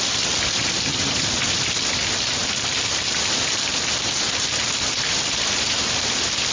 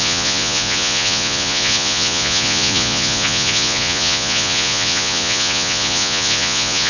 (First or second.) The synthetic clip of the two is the second